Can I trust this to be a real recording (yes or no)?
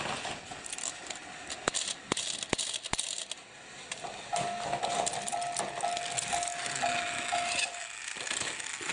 yes